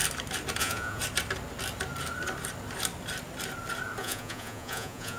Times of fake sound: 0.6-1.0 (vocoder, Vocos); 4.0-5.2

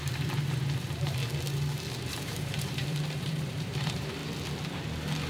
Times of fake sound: 0.0-1.2 (vocoder, BigVGAN v2); 2.1-4.2

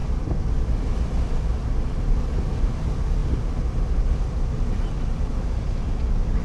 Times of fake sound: none

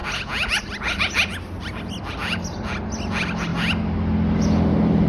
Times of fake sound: none